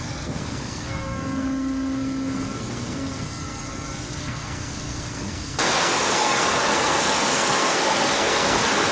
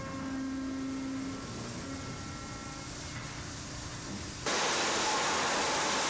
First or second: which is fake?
first